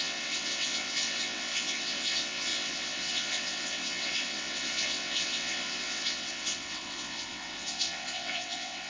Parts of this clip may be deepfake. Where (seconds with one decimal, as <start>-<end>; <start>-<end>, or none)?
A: 0.0-8.9